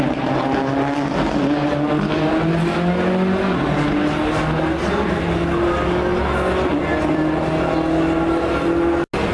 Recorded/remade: recorded